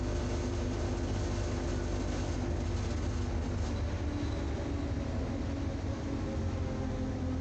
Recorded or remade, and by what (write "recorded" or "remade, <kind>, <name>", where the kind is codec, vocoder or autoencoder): recorded